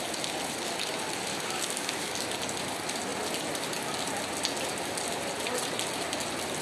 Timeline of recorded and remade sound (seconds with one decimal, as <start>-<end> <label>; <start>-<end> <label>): 0.0-1.3 recorded; 1.3-2.1 remade; 2.1-6.6 recorded